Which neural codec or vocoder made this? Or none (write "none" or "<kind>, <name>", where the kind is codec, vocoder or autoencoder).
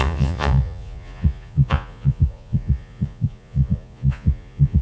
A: vocoder, Vocos